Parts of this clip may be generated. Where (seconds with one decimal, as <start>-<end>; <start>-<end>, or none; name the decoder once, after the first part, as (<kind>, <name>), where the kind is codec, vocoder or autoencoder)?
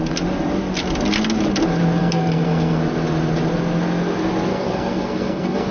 2.0-2.8 (codec, SNAC); 4.5-5.7